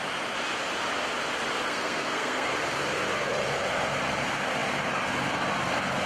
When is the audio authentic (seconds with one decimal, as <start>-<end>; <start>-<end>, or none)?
0.0-1.6; 2.5-6.1